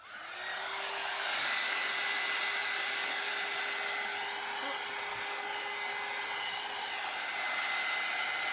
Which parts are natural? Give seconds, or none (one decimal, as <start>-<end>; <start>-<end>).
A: 0.0-0.5; 1.9-2.6; 3.3-5.1; 5.9-8.5